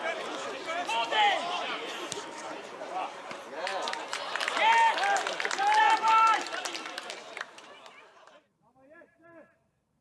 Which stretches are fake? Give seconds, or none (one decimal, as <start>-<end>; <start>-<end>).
0.0-3.7; 6.0-10.0

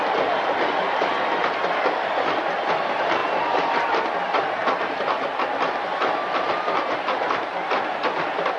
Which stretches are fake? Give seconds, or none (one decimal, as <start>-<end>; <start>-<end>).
3.2-3.9; 4.6-5.2

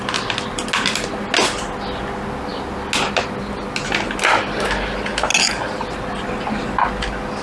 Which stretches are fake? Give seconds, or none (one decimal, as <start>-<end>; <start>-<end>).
none

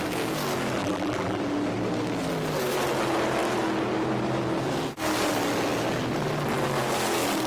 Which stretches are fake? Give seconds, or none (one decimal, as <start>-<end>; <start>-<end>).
0.8-1.4

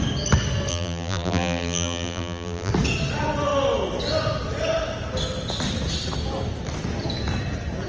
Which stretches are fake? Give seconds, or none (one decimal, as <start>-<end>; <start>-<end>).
0.7-2.7

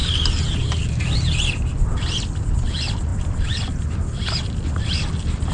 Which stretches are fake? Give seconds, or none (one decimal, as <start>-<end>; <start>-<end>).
none

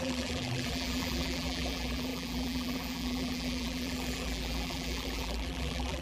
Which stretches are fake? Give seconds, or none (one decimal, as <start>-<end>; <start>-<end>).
0.0-6.0